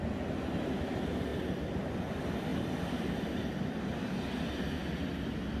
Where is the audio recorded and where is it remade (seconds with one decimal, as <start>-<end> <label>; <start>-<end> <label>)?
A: 0.0-5.6 recorded